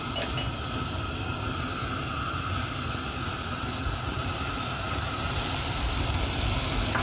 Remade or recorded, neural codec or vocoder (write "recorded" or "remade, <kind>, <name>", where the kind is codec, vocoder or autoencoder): recorded